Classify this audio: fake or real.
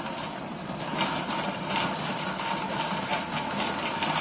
real